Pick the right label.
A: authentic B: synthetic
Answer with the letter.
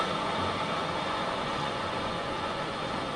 B